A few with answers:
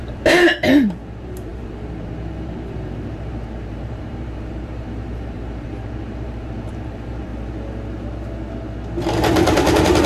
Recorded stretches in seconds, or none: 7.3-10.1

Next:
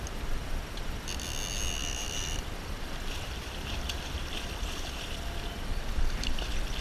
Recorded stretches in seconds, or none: 0.0-1.8; 5.8-6.8

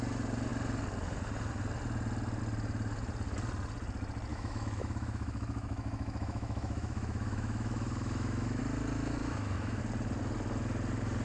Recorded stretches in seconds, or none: 0.0-4.3; 8.6-9.2; 9.8-11.2

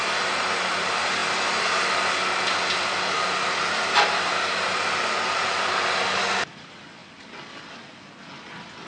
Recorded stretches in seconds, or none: 0.0-0.7; 1.2-6.4; 7.0-7.7